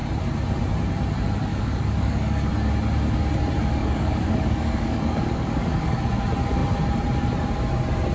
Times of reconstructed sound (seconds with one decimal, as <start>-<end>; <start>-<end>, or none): 1.5-2.5; 3.8-6.0